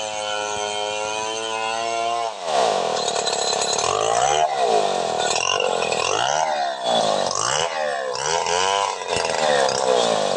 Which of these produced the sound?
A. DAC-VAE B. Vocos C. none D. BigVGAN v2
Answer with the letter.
C